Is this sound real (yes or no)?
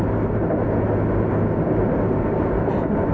yes